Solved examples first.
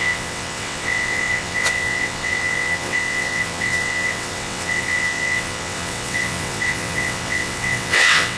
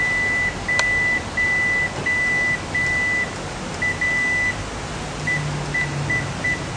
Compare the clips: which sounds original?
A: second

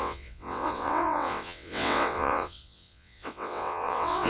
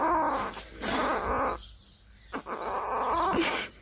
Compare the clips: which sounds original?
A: second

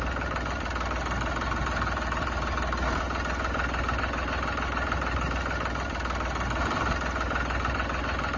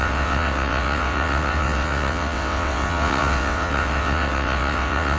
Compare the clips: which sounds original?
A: first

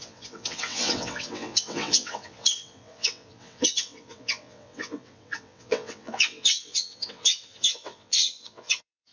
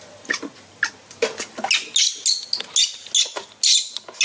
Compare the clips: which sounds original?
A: second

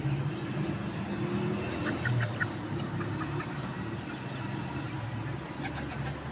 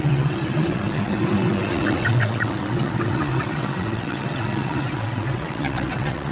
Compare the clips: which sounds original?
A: first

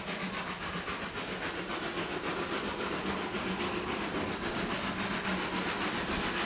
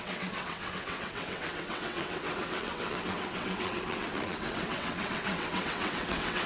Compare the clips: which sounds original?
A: first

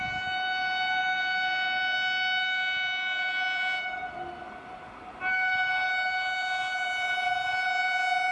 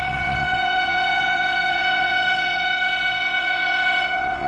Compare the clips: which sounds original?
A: first